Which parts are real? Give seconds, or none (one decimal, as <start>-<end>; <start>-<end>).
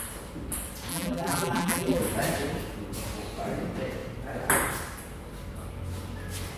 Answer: 0.0-0.9; 2.0-6.6